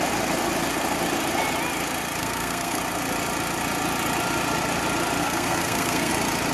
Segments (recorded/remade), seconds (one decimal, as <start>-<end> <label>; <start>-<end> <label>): 0.0-2.2 recorded; 2.2-2.8 remade; 2.8-5.2 recorded; 5.2-6.1 remade; 6.1-6.5 recorded